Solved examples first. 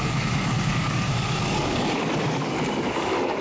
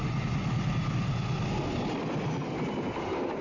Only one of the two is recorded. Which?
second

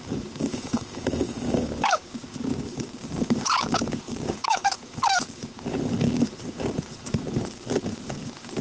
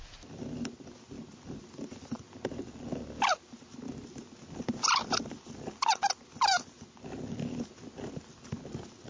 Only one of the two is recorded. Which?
second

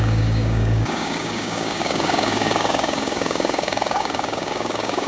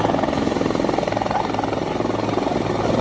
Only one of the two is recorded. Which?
second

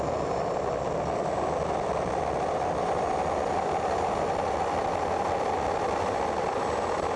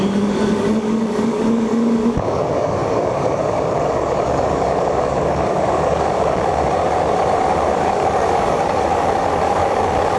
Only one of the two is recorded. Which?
first